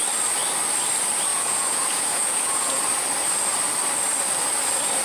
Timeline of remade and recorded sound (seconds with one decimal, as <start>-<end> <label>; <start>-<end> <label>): 0.0-1.3 recorded; 1.3-2.8 remade; 2.8-5.0 recorded

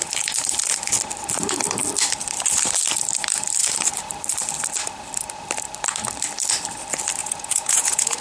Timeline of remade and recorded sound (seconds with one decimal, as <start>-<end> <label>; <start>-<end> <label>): 0.0-7.2 recorded; 7.2-8.2 remade

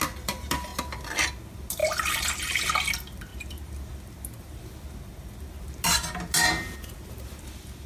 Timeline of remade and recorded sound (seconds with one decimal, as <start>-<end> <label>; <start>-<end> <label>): 0.0-7.9 recorded

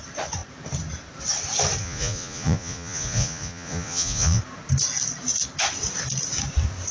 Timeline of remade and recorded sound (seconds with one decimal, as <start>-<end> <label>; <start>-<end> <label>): 0.0-1.8 recorded; 1.8-4.4 remade; 4.4-6.9 recorded